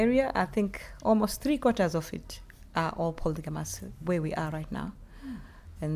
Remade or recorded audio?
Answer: recorded